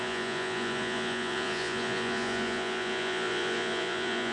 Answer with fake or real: fake